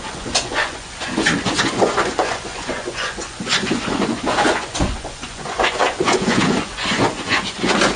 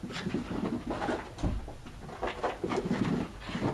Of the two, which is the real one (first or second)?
second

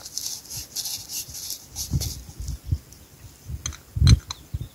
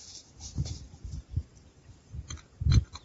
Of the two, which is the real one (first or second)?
first